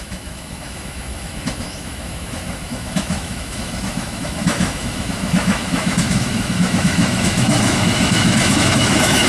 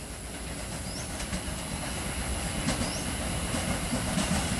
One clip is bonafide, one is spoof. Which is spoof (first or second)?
first